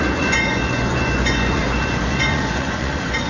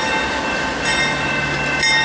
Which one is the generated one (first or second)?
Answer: first